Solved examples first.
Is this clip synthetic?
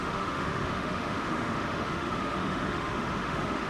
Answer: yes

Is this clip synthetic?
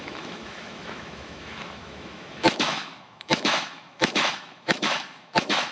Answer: yes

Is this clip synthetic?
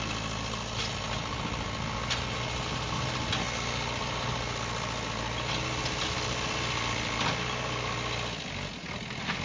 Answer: no